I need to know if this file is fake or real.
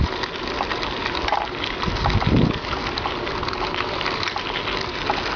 real